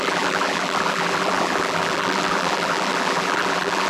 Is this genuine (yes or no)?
no